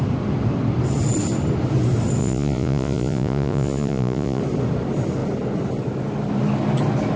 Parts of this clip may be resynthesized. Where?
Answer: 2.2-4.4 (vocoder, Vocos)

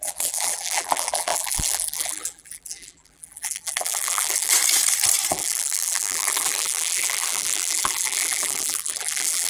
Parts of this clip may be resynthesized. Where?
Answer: 0.0-4.5 (vocoder, BigVGAN v2); 5.3-9.5

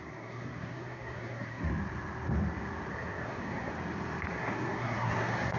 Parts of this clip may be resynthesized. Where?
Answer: 0.0-1.7 (codec, SNAC); 2.9-3.7; 4.3-5.6

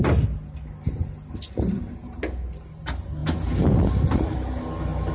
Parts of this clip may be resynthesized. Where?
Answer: none

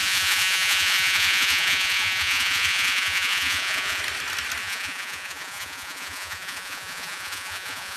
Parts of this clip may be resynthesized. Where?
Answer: 0.0-4.0 (vocoder, Vocos); 4.6-8.0

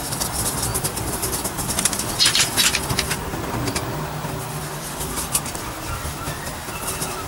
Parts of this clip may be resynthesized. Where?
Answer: 0.0-3.8 (vocoder, BigVGAN v2); 4.6-7.3

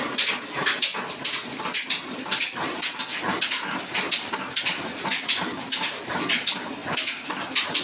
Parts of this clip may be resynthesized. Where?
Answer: none